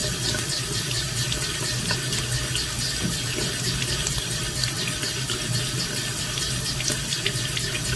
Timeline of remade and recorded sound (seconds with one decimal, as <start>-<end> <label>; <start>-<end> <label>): 0.0-8.0 recorded

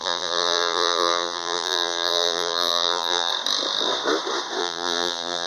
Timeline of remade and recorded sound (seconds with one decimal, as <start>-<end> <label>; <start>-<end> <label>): 0.0-3.3 remade; 3.3-4.6 recorded; 4.6-5.5 remade